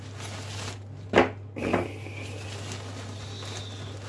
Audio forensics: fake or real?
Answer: real